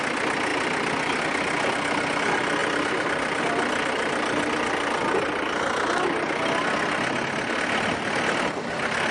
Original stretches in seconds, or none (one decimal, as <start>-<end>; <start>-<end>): 0.0-9.1